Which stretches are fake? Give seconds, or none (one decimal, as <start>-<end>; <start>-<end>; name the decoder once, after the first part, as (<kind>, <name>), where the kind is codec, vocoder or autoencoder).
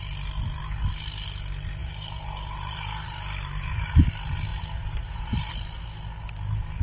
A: 1.8-4.1 (vocoder, BigVGAN v2); 4.5-5.5